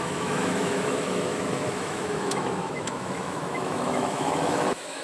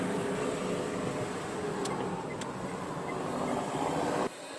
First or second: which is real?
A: second